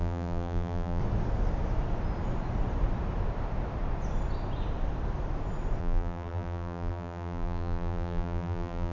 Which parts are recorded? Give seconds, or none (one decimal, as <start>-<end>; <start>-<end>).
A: 1.0-5.8